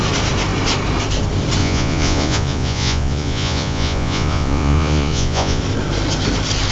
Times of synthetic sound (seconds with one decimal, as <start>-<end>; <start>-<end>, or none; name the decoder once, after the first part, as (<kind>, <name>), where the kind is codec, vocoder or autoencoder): 1.6-5.6 (vocoder, Vocos)